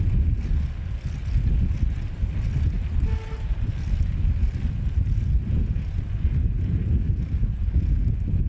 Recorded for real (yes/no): yes